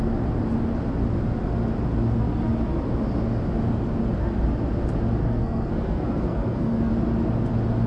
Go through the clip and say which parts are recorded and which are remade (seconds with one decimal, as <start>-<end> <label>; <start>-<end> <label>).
0.0-5.2 recorded; 5.2-6.9 remade; 6.9-7.9 recorded